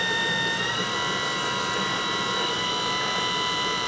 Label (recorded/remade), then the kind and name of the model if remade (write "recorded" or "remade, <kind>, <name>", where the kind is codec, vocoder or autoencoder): remade, vocoder, BigVGAN v2